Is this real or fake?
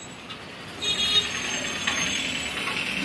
real